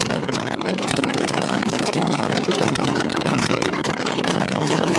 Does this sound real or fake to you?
fake